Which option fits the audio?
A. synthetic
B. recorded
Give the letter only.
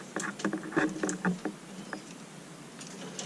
B